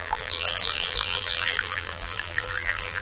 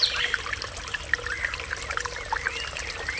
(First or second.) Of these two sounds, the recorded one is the second